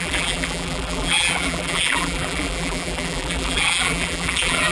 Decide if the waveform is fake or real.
fake